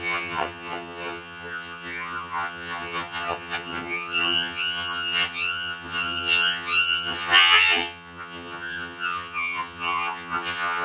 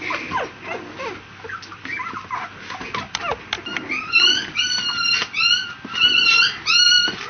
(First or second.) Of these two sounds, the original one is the second